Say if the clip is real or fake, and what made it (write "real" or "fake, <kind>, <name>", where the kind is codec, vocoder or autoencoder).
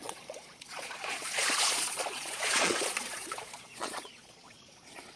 fake, vocoder, Vocos